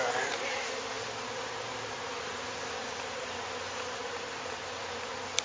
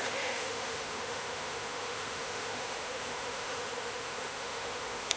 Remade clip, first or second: second